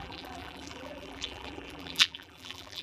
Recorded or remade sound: remade